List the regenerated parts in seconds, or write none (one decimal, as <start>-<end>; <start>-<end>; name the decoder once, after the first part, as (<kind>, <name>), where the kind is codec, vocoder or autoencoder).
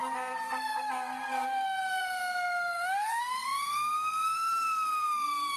0.0-5.6 (codec, SNAC)